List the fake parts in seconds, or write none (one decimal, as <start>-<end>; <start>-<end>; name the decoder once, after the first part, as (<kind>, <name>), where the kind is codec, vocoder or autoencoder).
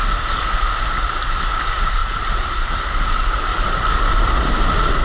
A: 2.0-2.9 (vocoder, BigVGAN v2); 3.5-5.0